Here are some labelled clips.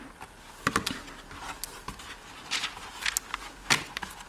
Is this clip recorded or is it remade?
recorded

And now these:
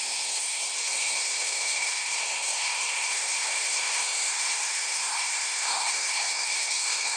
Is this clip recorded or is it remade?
remade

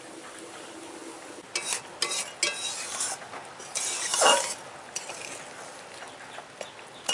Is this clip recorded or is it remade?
recorded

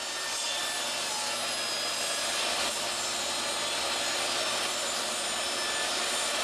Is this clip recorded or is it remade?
recorded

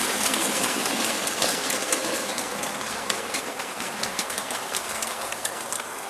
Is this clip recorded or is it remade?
remade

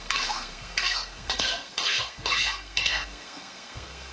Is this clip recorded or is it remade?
remade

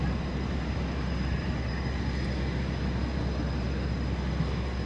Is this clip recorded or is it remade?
recorded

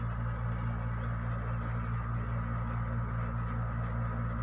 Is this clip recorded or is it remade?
recorded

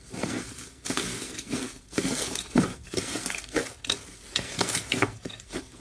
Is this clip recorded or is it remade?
remade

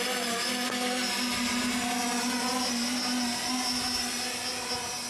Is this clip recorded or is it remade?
recorded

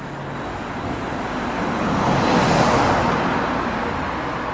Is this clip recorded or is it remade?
recorded